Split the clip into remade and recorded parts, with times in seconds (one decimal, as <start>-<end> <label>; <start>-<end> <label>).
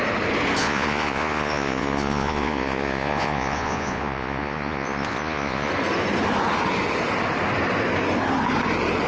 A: 0.0-0.6 recorded; 0.6-5.7 remade; 5.7-9.1 recorded